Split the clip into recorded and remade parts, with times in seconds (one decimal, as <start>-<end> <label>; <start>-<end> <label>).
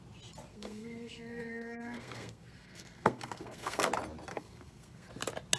0.0-0.5 recorded; 0.5-3.9 remade; 3.9-4.3 recorded; 4.3-5.1 remade; 5.1-5.6 recorded